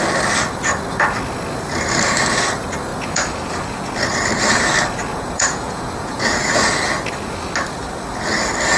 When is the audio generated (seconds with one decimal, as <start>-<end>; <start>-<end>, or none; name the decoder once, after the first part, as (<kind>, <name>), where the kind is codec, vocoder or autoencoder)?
2.9-3.9 (vocoder, Vocos); 5.1-6.7

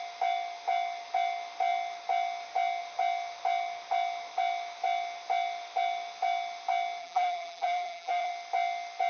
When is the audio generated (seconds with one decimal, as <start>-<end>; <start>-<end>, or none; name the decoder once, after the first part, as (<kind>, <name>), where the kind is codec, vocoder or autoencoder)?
7.0-8.3 (vocoder, BigVGAN v2)

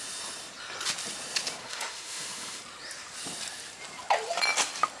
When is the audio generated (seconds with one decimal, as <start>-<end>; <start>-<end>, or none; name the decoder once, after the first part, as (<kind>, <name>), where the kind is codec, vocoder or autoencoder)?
1.6-2.6 (autoencoder, DAC-VAE)

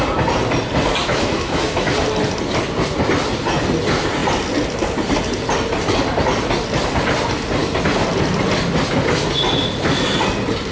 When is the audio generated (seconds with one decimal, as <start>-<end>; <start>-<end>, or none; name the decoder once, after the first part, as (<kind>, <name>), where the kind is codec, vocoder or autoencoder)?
1.0-1.9 (autoencoder, DAC-VAE)

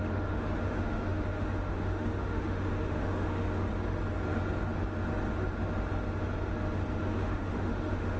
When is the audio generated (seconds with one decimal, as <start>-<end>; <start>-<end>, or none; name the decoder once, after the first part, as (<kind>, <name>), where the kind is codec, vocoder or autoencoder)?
0.0-3.7 (autoencoder, DAC-VAE); 7.0-8.2

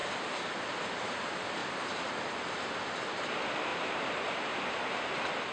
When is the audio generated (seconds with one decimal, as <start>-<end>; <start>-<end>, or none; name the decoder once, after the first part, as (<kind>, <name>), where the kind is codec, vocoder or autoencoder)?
0.0-1.2 (vocoder, BigVGAN v2); 3.7-4.6

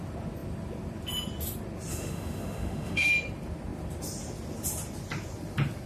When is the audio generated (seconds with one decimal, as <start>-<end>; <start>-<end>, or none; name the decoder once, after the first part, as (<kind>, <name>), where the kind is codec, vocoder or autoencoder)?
1.9-3.1 (autoencoder, DAC-VAE)